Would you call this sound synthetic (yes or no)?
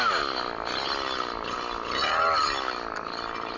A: no